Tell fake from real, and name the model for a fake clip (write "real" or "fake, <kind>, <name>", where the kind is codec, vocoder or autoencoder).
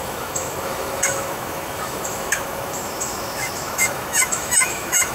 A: fake, autoencoder, DAC-VAE